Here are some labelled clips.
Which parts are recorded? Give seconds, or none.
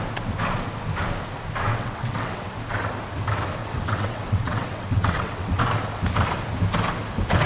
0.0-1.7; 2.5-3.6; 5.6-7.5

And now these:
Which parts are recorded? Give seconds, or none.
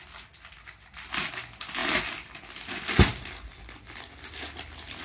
0.0-5.0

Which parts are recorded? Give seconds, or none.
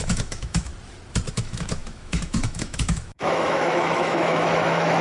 0.7-1.3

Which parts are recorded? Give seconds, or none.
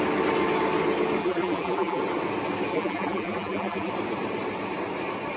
0.0-1.2; 2.0-2.7; 3.9-5.4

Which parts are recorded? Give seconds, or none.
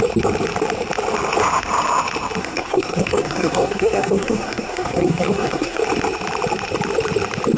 0.0-2.4; 5.8-7.6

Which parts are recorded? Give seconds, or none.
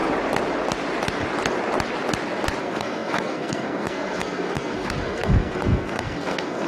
0.0-2.6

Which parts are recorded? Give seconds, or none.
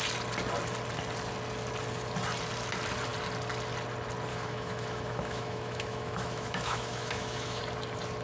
0.0-4.3; 7.6-8.2